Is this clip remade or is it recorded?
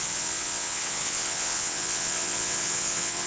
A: remade